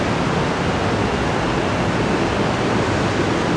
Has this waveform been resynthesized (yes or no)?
no